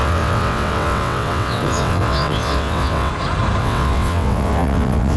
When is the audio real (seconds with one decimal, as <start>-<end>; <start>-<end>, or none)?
3.1-3.6